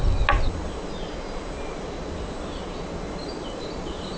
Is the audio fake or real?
real